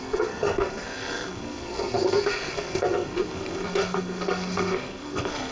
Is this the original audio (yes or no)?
no